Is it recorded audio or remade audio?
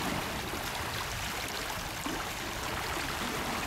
remade